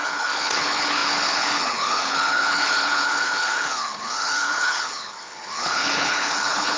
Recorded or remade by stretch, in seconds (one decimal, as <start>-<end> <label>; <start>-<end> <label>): 0.0-6.8 remade